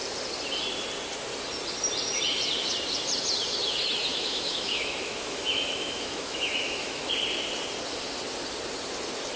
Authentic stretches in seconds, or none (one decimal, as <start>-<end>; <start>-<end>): 0.0-4.1; 7.1-9.4